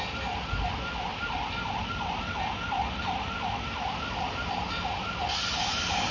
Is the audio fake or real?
real